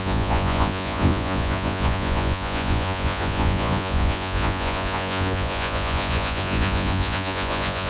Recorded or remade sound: remade